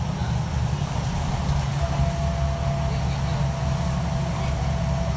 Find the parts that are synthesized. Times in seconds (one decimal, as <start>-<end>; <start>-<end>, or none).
none